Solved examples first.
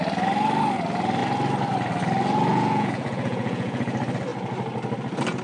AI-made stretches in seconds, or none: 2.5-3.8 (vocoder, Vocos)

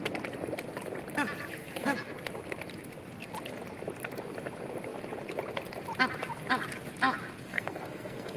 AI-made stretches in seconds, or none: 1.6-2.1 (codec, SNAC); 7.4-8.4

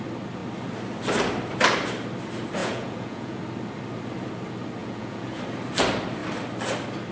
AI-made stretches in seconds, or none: 2.6-3.4 (vocoder, Vocos); 4.8-5.4

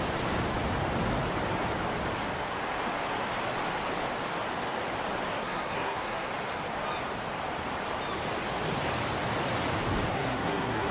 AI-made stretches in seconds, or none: 5.4-6.3 (codec, SNAC); 10.1-10.9

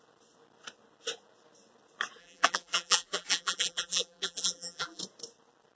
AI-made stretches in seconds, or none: 2.2-5.0 (vocoder, BigVGAN v2)

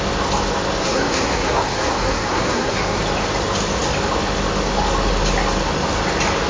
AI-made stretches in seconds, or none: 0.8-3.0 (codec, SNAC)